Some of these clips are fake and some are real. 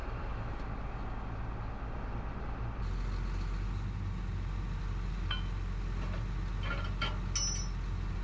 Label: real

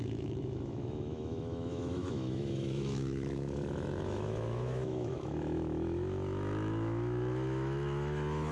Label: fake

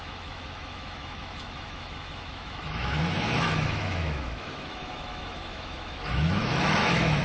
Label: fake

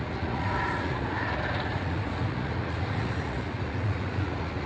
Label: fake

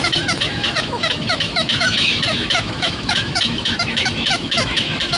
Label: fake